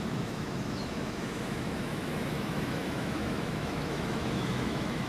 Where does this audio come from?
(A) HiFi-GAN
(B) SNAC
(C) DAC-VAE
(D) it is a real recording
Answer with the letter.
C